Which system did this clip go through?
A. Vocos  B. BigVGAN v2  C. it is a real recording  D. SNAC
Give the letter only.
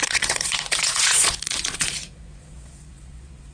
A